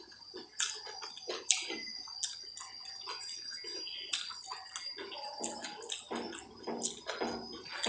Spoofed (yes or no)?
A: no